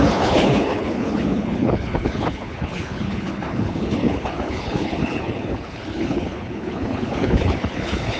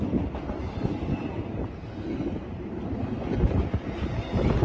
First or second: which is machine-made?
first